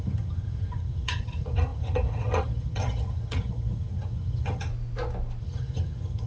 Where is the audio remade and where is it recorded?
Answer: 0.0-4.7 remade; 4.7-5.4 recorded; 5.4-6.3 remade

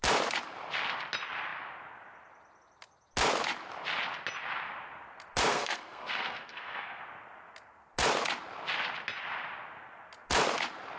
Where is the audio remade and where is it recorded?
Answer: 0.0-5.5 recorded; 5.5-7.0 remade; 7.0-11.0 recorded

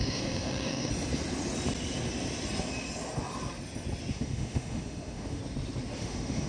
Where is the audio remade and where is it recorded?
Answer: 0.0-0.9 remade; 0.9-4.1 recorded; 4.1-5.4 remade; 5.4-6.0 recorded; 6.0-6.5 remade

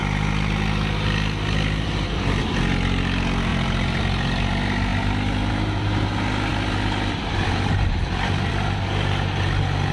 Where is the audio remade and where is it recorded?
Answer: 0.0-2.4 remade; 2.4-3.5 recorded; 3.5-4.0 remade; 4.0-6.5 recorded; 6.5-8.5 remade; 8.5-9.9 recorded

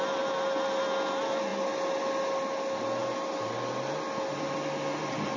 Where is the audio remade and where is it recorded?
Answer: 0.0-5.4 recorded

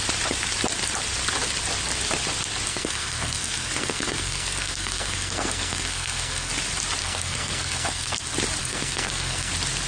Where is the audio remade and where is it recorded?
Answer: 0.0-2.7 recorded; 2.7-6.5 remade; 6.5-7.0 recorded; 7.0-8.2 remade; 8.2-8.6 recorded; 8.6-9.5 remade; 9.5-9.9 recorded

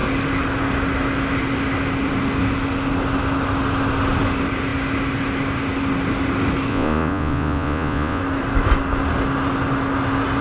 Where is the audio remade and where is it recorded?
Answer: 0.0-6.7 recorded; 6.7-8.2 remade; 8.2-10.4 recorded

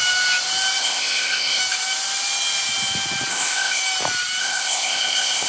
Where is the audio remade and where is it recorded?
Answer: 0.0-0.8 recorded; 0.8-1.6 remade; 1.6-3.3 recorded; 3.3-3.8 remade; 3.8-4.4 recorded; 4.4-5.5 remade